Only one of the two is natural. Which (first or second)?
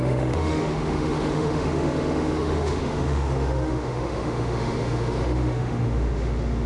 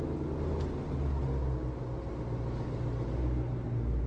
second